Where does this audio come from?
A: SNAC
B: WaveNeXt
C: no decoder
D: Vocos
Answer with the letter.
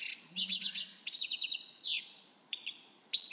D